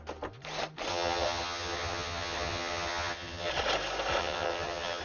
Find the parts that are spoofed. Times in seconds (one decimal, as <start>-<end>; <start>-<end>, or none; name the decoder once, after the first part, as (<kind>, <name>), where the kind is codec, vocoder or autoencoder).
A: 0.9-3.5 (vocoder, HiFi-GAN); 4.2-5.0